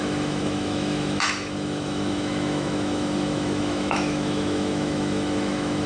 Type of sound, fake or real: fake